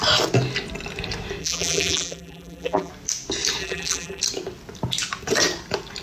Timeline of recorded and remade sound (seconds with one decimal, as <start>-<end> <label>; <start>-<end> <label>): 0.0-1.4 recorded; 1.4-2.9 remade; 2.9-3.6 recorded; 3.6-4.2 remade; 4.2-6.0 recorded